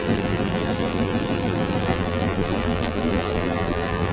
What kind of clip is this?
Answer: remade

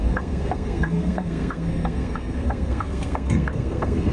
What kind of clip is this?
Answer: remade